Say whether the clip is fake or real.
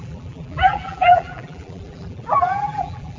fake